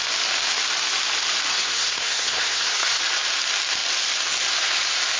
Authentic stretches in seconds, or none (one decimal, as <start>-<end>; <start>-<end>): 0.0-1.5; 3.0-5.2